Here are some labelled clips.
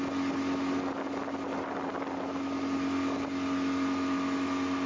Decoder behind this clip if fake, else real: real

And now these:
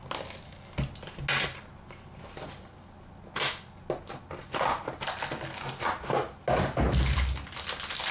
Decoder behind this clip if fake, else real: real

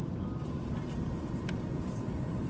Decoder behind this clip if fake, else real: real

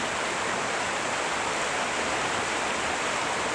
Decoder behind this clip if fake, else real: real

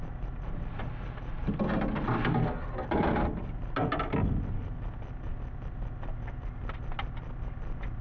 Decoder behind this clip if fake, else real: real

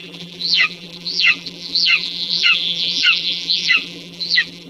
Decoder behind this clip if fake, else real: fake, vocoder, BigVGAN v2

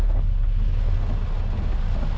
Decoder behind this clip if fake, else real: real